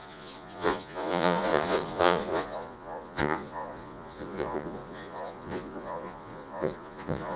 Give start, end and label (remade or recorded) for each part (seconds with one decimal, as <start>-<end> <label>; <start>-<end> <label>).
0.0-7.4 remade